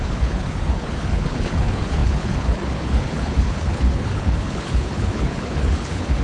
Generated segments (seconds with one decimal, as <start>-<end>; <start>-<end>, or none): 0.0-6.2